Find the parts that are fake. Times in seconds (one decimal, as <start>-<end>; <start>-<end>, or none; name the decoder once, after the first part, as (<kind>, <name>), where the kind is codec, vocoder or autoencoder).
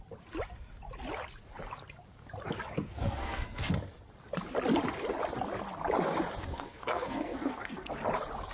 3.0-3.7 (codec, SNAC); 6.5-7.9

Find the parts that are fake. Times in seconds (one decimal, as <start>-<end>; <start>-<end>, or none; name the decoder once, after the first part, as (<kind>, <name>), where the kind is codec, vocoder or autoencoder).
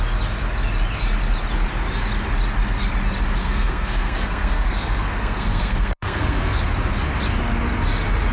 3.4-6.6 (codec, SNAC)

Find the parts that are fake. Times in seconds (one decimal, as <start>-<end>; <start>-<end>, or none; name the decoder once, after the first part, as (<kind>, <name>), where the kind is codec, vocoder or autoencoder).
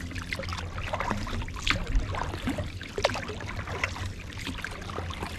none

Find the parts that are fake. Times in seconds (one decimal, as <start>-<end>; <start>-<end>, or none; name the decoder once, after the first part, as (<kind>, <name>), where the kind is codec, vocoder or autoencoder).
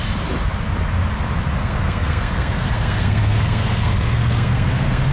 1.6-5.1 (codec, SNAC)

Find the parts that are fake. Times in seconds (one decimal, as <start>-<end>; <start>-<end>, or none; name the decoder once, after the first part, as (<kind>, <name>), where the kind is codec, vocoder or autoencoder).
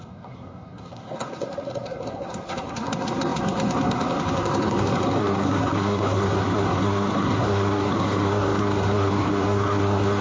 0.0-10.2 (codec, SNAC)